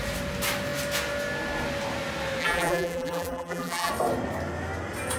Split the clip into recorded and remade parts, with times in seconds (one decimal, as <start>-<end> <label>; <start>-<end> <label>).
0.0-2.4 recorded; 2.4-3.9 remade; 3.9-5.2 recorded